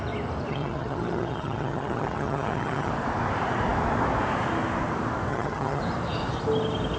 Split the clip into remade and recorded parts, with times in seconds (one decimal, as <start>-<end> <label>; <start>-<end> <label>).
0.0-0.5 recorded; 0.5-2.9 remade; 2.9-5.3 recorded; 5.3-5.8 remade; 5.8-7.0 recorded